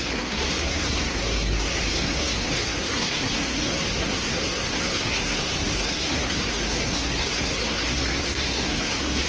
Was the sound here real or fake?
fake